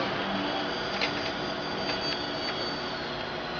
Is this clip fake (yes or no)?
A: no